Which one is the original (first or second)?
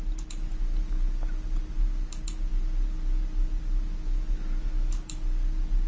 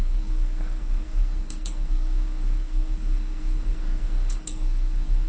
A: first